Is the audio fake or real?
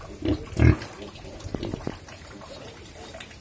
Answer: real